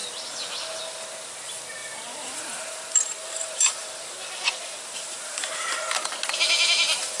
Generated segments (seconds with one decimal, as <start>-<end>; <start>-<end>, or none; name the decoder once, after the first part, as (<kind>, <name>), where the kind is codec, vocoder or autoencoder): 1.8-6.1 (vocoder, BigVGAN v2)

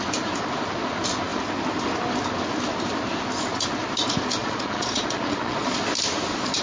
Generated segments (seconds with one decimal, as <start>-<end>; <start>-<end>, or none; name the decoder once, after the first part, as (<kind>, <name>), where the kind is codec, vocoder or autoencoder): 4.4-5.8 (vocoder, Vocos)